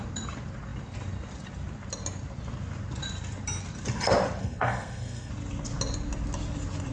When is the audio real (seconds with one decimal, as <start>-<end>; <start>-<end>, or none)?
0.0-4.4; 5.3-6.9